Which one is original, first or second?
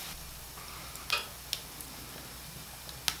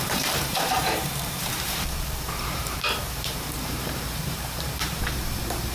first